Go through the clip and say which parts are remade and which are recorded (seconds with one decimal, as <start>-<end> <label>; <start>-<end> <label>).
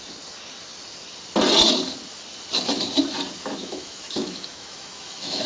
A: 0.0-3.6 recorded; 3.6-5.5 remade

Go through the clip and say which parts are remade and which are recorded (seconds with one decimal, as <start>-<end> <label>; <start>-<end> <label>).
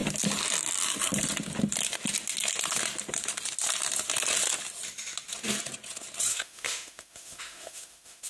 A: 0.0-6.3 recorded; 6.3-8.3 remade